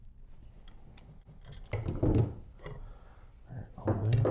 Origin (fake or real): real